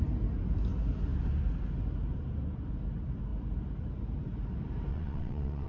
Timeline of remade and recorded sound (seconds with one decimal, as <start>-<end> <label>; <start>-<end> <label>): 0.0-4.9 recorded; 4.9-5.7 remade